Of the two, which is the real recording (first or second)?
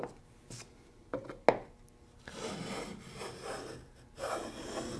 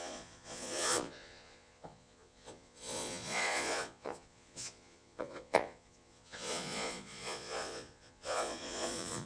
first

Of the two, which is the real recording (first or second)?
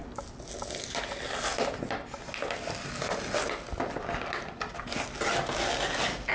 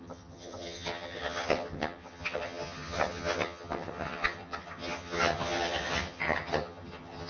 first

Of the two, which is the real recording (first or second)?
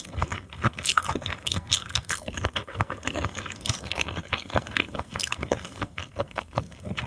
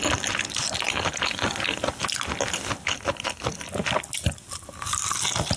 second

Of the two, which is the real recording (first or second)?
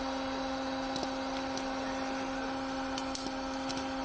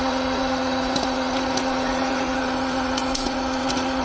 first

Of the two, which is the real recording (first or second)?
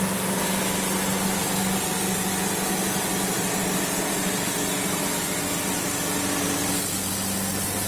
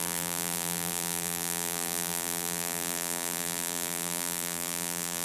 first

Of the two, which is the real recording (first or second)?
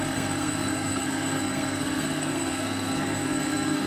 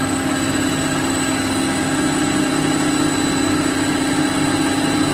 second